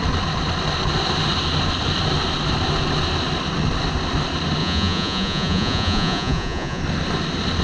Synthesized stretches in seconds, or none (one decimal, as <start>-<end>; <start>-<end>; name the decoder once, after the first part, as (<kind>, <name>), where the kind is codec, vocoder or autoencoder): 4.6-6.8 (vocoder, Vocos)